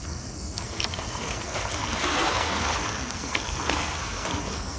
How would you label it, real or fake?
fake